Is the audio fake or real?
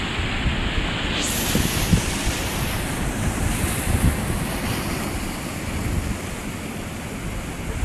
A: real